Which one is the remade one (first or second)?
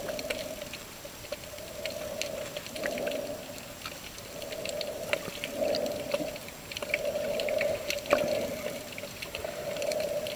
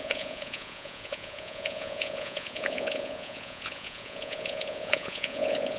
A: second